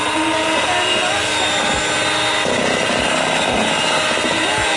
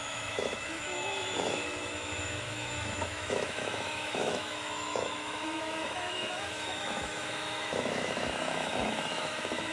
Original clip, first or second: first